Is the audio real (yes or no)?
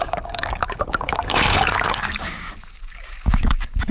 no